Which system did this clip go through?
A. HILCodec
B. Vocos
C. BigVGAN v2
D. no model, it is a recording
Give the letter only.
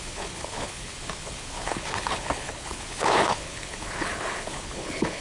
A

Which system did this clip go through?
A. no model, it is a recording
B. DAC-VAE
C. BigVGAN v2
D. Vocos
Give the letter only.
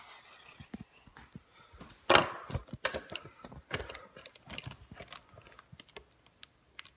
A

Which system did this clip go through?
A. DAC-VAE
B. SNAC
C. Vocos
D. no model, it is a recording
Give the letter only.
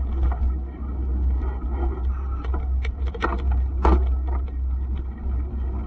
D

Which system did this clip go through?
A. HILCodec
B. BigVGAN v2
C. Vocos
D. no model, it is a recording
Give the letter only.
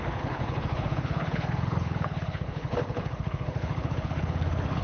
A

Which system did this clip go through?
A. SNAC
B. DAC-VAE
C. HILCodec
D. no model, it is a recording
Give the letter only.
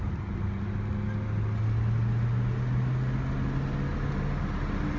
D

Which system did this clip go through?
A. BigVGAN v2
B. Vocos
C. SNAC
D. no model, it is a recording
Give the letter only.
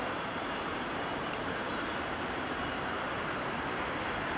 A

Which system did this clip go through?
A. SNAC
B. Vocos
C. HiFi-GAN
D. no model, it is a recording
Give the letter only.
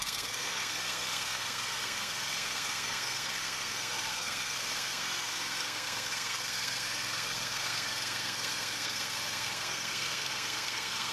A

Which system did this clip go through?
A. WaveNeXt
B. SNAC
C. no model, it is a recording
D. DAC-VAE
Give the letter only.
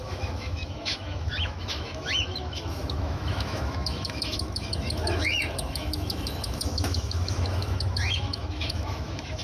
D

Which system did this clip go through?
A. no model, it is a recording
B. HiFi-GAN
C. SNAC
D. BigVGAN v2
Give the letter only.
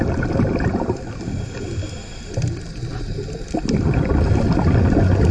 A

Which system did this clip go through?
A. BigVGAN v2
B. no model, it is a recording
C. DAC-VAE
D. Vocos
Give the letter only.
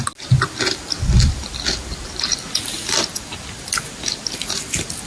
B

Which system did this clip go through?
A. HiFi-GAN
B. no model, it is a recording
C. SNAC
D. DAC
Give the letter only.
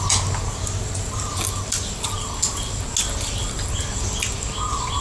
B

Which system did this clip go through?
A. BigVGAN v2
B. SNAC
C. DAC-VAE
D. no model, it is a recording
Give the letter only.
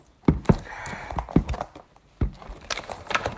A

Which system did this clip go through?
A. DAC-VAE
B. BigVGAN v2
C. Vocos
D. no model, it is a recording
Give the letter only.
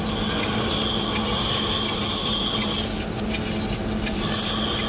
D